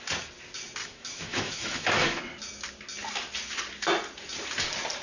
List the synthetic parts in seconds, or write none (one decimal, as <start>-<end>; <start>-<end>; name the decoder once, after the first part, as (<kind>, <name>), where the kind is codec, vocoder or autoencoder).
0.8-2.2 (autoencoder, DAC-VAE)